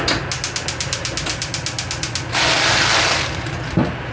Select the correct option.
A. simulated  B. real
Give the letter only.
B